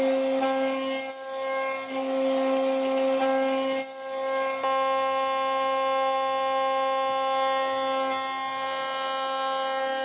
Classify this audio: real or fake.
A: real